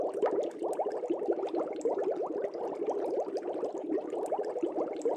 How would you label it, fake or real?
real